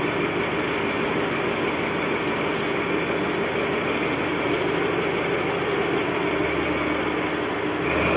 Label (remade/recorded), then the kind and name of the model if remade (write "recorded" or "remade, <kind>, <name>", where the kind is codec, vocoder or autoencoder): recorded